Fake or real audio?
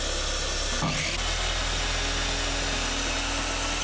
real